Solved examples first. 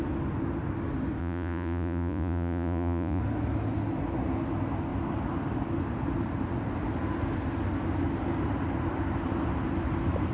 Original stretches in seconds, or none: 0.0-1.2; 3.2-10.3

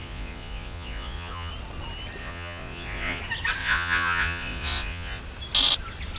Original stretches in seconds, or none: 1.5-2.2; 3.2-3.6; 5.2-6.2

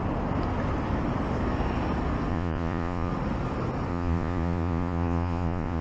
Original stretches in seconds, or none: 0.0-2.3; 3.1-3.9

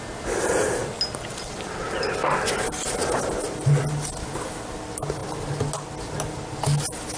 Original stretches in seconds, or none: 0.0-7.2

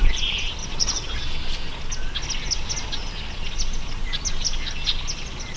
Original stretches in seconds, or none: 0.0-0.6; 1.2-5.6